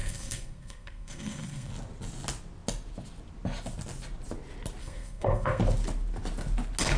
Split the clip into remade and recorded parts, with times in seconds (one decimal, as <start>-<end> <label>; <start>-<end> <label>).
0.0-1.7 remade; 1.7-4.8 recorded; 4.8-5.6 remade; 5.6-7.0 recorded